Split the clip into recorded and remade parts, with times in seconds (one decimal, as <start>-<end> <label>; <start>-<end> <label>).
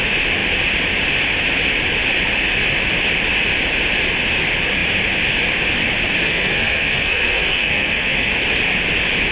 0.0-6.2 recorded; 6.2-8.3 remade; 8.3-9.3 recorded